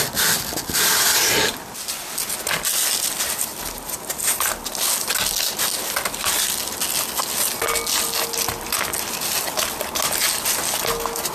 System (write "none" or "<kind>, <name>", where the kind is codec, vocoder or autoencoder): none